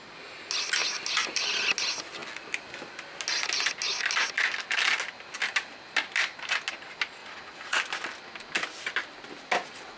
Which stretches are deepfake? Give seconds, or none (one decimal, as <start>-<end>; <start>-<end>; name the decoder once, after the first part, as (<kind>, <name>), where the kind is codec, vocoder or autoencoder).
7.2-7.8 (vocoder, Vocos)